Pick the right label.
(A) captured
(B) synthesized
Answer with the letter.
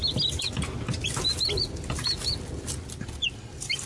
A